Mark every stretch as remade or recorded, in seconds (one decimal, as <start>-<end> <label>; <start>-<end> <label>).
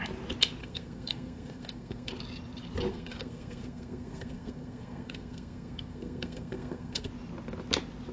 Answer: 0.0-0.6 recorded; 0.6-2.1 remade; 2.1-2.9 recorded; 2.9-7.1 remade; 7.1-8.1 recorded